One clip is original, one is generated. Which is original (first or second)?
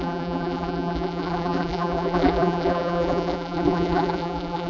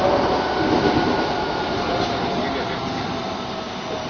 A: second